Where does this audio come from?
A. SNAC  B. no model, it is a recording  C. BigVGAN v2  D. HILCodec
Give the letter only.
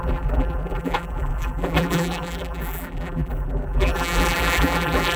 C